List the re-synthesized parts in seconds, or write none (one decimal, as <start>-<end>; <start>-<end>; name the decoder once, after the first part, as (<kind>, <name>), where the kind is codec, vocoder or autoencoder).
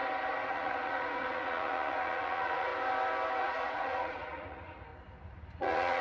0.5-2.7 (vocoder, Vocos); 3.4-4.9; 5.6-6.0